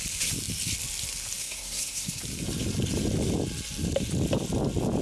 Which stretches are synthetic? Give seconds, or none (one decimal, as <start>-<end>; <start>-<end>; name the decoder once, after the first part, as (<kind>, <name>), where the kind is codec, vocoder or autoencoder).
1.4-2.2 (codec, SNAC)